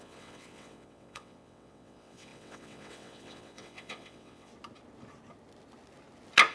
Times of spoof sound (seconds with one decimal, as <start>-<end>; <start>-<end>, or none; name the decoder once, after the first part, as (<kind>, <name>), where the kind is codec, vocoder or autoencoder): 0.0-4.5 (vocoder, WaveNeXt)